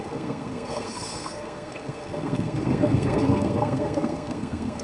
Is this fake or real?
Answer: fake